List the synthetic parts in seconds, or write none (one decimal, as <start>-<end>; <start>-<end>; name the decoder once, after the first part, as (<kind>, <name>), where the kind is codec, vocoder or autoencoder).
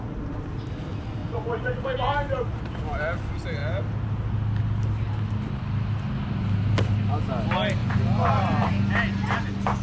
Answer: 1.2-1.8 (vocoder, Vocos); 7.8-8.7